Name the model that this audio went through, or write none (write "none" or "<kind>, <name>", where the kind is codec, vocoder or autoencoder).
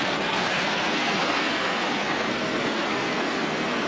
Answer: codec, SNAC